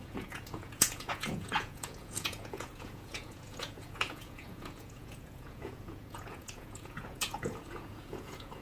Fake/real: fake